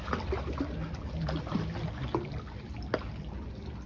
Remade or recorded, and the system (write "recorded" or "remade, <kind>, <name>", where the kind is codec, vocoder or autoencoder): recorded